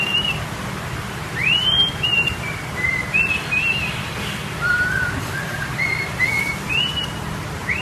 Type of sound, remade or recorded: recorded